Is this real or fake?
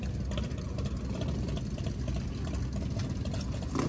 real